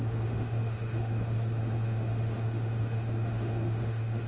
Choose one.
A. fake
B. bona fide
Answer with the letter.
A